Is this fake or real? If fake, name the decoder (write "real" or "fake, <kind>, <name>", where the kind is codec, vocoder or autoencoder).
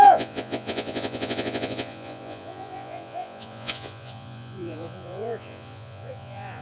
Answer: fake, vocoder, Vocos